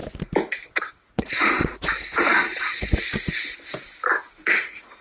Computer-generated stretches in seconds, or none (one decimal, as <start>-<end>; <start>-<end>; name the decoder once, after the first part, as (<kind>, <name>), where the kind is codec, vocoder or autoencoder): 0.9-1.6 (vocoder, Vocos); 2.2-2.9; 4.6-5.0